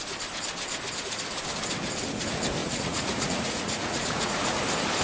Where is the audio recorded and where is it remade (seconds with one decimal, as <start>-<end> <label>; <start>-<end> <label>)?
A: 0.0-2.6 recorded; 2.6-4.6 remade; 4.6-5.0 recorded